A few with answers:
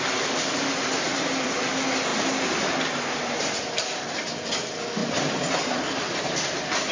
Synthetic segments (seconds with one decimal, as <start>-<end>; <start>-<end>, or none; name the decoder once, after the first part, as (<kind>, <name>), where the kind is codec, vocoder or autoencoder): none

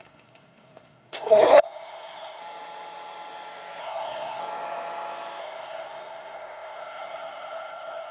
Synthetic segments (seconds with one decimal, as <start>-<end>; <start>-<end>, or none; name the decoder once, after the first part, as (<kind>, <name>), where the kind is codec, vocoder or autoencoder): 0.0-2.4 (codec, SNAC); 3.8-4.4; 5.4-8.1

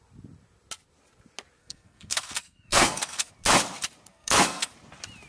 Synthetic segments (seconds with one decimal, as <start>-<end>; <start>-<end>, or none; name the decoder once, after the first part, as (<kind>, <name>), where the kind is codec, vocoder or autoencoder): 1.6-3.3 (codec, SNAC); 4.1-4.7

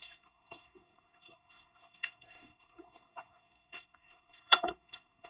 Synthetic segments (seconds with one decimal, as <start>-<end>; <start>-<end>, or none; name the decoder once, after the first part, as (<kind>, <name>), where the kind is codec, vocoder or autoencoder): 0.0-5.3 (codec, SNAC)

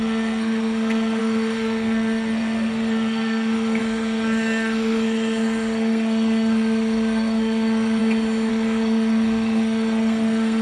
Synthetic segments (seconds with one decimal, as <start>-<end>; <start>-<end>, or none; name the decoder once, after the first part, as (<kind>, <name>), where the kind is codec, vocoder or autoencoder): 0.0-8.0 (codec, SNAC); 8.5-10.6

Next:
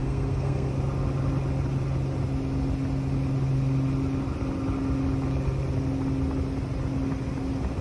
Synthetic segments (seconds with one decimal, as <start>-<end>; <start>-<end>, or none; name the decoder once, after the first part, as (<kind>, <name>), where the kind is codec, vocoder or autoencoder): 0.0-0.7 (codec, SNAC)